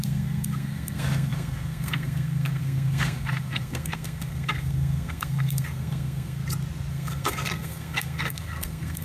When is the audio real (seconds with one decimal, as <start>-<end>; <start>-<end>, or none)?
6.4-6.9